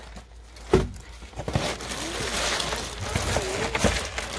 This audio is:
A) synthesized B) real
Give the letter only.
B